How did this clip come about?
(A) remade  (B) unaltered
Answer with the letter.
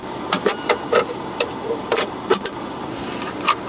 A